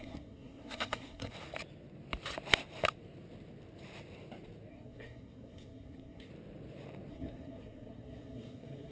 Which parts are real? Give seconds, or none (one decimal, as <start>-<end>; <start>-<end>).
1.3-4.7; 6.3-7.1